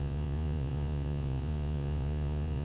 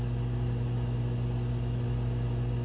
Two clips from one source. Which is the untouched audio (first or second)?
second